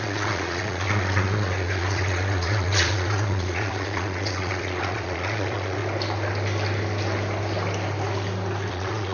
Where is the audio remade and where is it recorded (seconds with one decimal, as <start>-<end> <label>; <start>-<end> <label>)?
0.0-5.8 remade; 5.8-8.7 recorded; 8.7-9.1 remade